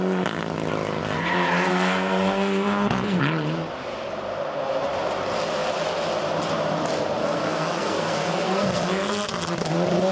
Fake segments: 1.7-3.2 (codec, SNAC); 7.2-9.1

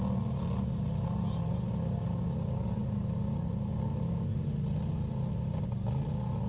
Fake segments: none

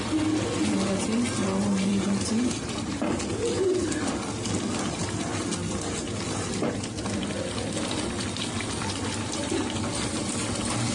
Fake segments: 1.9-3.1 (vocoder, BigVGAN v2)

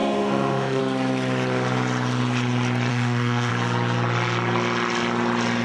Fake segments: 0.0-0.8 (autoencoder, DAC-VAE); 2.9-3.5

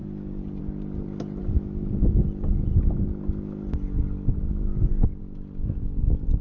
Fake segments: 0.0-0.6 (vocoder, Vocos)

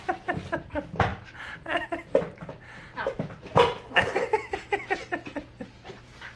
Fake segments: none